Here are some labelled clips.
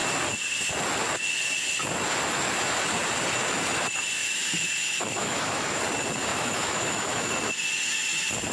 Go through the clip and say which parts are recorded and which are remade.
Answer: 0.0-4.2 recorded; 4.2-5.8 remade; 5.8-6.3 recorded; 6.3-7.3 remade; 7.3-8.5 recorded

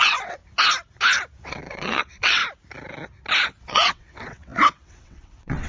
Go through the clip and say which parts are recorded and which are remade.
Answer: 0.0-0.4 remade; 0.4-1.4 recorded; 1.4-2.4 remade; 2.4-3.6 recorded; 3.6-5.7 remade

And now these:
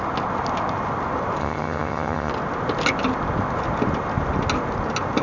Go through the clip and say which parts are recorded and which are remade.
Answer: 0.0-1.4 recorded; 1.4-2.3 remade; 2.3-5.2 recorded